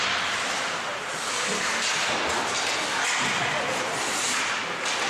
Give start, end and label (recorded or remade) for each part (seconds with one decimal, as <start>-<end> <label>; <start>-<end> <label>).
0.0-5.1 recorded